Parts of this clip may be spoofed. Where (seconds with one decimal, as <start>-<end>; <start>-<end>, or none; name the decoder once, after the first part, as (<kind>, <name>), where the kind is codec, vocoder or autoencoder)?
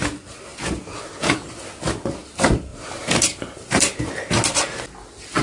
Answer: 2.7-4.1 (vocoder, BigVGAN v2)